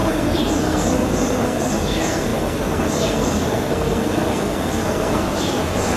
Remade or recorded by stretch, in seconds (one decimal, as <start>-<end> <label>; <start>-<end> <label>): 0.0-6.0 remade